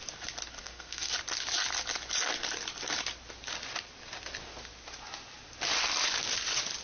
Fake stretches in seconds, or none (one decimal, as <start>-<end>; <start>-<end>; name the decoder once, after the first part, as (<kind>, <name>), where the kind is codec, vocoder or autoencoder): 0.6-1.1 (codec, SNAC)